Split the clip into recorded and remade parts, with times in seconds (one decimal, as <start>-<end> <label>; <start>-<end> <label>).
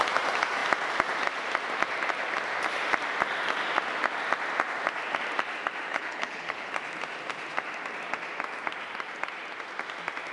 0.0-5.9 recorded; 5.9-6.7 remade; 6.7-10.3 recorded